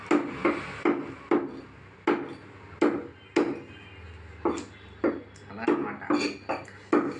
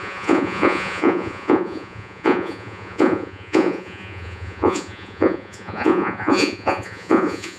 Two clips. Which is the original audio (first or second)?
first